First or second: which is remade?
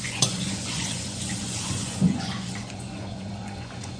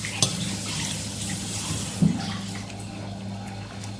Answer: first